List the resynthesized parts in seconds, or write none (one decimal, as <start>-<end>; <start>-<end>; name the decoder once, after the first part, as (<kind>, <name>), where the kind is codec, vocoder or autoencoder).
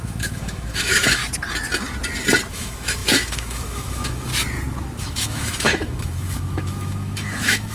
0.0-1.2 (autoencoder, DAC-VAE); 2.5-4.3; 5.0-7.7